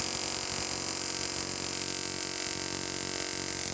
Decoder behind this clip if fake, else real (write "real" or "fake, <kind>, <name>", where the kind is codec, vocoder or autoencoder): real